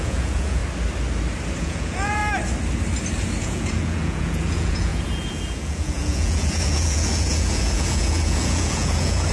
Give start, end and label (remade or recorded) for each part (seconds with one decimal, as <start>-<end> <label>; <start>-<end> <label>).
0.0-0.6 remade; 0.6-1.6 recorded; 1.6-2.2 remade; 2.2-3.4 recorded; 3.4-9.3 remade

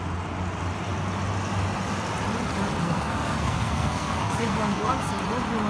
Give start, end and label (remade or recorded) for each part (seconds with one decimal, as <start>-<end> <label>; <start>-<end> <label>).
0.0-2.8 recorded; 2.8-5.2 remade; 5.2-5.7 recorded